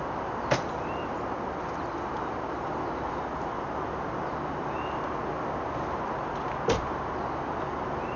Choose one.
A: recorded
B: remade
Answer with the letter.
A